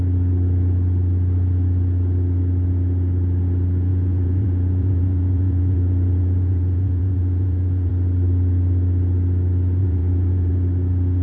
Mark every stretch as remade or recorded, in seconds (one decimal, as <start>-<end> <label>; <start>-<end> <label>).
0.0-3.9 recorded; 3.9-7.9 remade; 7.9-9.8 recorded; 9.8-10.5 remade; 10.5-11.2 recorded